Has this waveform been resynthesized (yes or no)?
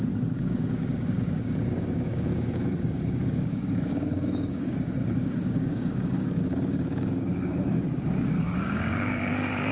yes